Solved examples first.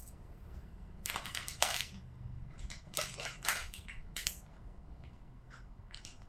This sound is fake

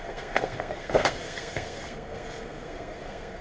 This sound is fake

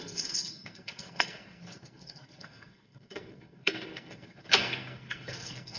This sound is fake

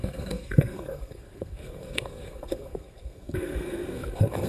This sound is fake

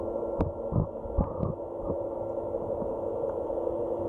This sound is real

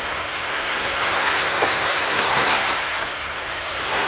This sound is fake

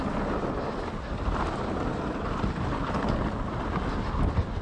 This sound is real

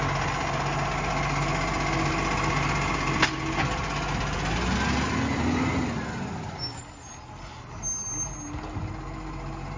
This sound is real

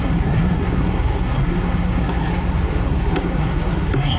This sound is fake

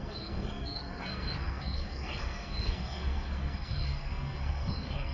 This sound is fake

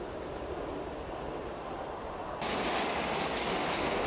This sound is real